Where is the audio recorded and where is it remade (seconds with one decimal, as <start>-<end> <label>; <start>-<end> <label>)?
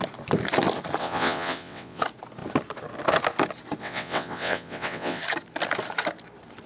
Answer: 0.0-1.0 recorded; 1.0-2.0 remade; 2.0-3.8 recorded; 3.8-5.2 remade; 5.2-6.7 recorded